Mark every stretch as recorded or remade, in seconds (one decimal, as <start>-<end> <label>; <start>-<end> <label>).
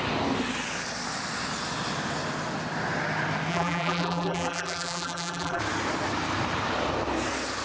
0.0-3.5 recorded; 3.5-5.6 remade; 5.6-7.6 recorded